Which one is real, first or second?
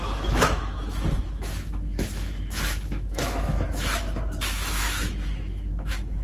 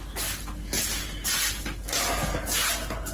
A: second